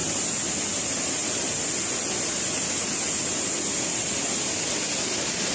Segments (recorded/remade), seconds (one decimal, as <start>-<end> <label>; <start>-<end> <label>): 0.0-5.5 recorded